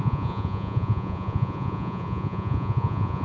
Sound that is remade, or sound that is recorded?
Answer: remade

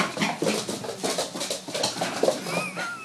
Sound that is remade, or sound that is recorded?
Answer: recorded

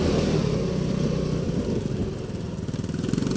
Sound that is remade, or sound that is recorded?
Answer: recorded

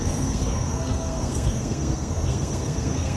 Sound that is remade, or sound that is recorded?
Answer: remade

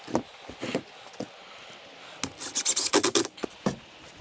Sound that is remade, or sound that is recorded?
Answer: recorded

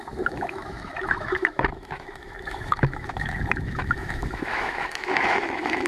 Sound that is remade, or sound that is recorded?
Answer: remade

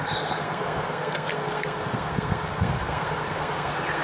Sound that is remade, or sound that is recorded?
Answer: remade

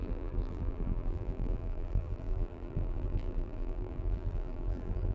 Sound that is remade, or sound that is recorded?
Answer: remade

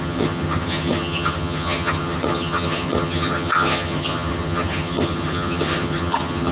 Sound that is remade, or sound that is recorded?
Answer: remade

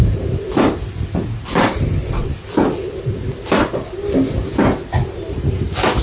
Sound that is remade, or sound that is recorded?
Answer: recorded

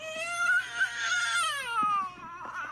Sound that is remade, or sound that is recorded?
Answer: recorded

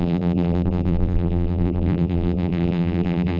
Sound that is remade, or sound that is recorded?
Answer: remade